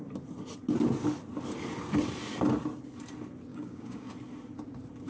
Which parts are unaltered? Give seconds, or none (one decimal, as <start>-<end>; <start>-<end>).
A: 0.0-3.5; 4.1-5.1